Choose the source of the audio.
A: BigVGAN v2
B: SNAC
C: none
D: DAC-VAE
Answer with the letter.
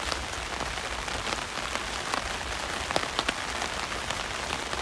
C